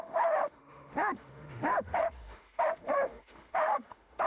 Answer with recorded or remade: remade